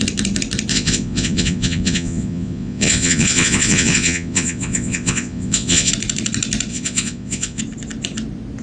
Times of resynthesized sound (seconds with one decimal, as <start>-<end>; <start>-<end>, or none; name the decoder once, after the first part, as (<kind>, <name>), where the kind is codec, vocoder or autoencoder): 0.7-5.9 (vocoder, Vocos); 6.7-7.6